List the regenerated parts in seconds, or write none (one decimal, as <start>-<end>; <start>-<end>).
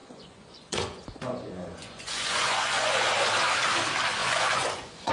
0.0-3.1; 4.2-5.1